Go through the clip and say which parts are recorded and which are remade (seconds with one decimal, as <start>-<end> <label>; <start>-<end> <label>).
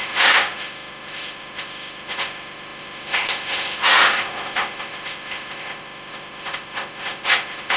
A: 0.0-7.8 remade